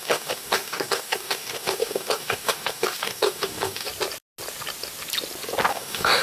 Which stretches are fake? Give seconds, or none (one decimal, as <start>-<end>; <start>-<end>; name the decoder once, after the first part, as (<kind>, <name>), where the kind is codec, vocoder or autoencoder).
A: 0.0-3.9 (codec, DAC); 5.7-6.2